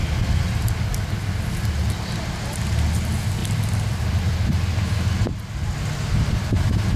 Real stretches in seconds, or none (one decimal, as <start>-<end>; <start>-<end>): 0.0-3.4; 4.2-7.0